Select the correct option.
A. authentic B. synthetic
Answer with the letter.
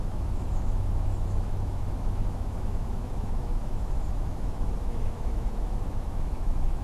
B